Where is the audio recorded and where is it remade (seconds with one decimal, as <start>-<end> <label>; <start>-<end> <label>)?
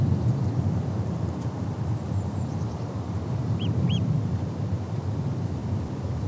0.0-6.3 remade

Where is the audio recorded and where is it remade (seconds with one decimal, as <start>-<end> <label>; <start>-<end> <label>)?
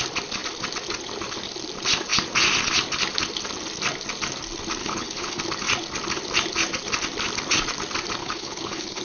0.0-4.8 recorded; 4.8-5.4 remade; 5.4-8.2 recorded; 8.2-9.0 remade